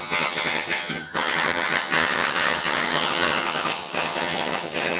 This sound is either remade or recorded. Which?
remade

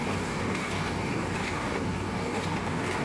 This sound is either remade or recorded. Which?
remade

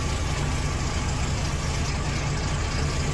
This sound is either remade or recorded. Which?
recorded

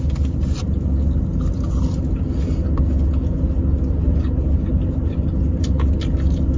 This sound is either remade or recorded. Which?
recorded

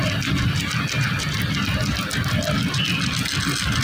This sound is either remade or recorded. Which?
recorded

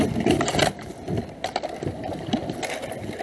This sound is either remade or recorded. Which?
recorded